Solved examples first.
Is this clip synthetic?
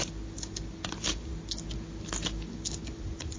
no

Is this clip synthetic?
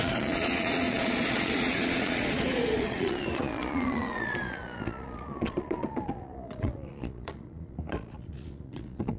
yes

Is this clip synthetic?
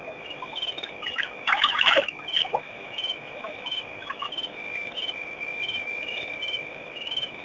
yes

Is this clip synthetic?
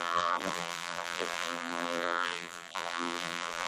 yes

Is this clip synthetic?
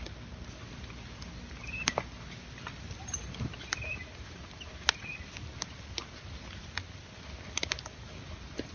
no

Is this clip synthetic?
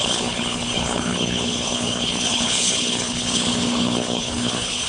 yes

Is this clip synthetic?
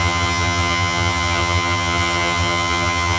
yes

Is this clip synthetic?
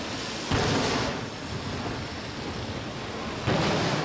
no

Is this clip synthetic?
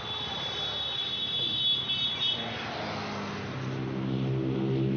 no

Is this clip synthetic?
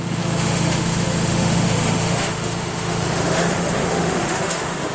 yes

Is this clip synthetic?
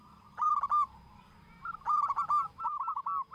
no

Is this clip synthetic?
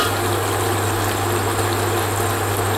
no